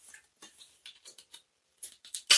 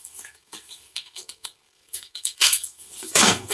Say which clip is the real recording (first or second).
first